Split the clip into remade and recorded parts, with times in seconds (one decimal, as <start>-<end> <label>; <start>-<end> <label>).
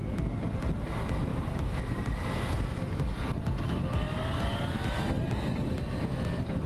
0.0-6.7 recorded